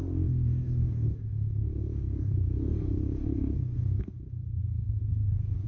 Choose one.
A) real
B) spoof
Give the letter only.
B